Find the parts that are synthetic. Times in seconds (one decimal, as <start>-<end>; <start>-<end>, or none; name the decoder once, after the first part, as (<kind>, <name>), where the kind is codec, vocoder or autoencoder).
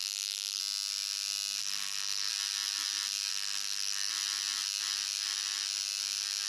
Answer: 0.0-0.6 (codec, SNAC); 1.6-2.3; 3.3-4.1